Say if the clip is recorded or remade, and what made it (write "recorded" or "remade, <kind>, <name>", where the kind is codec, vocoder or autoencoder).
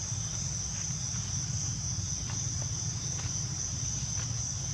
recorded